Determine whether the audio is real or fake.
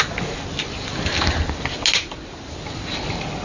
real